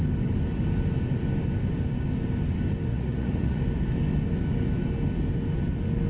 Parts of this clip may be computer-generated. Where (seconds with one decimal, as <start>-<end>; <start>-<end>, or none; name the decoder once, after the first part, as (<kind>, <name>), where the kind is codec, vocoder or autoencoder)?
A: 2.9-3.6 (vocoder, Vocos)